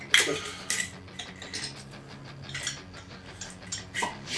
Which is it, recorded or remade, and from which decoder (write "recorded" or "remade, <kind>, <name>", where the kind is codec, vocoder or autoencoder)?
recorded